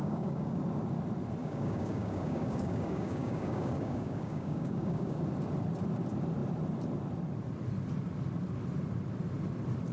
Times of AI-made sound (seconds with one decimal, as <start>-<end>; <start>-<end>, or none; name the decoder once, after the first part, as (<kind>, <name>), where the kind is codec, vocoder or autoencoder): 0.0-0.6 (codec, DAC); 1.4-5.2